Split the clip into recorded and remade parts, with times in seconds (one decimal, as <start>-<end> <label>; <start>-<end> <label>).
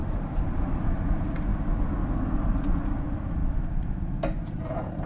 0.0-0.7 remade; 0.7-3.4 recorded; 3.4-3.9 remade; 3.9-5.1 recorded